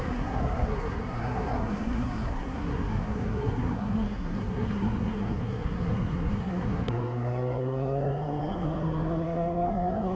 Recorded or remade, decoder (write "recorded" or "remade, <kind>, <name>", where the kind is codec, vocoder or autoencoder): remade, codec, SNAC